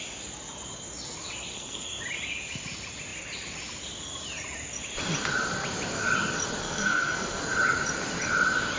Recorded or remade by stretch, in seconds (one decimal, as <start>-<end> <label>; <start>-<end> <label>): 0.0-1.5 recorded; 1.5-2.0 remade; 2.0-6.6 recorded; 6.6-7.4 remade; 7.4-8.8 recorded